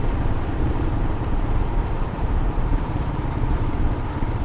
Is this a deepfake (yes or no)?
yes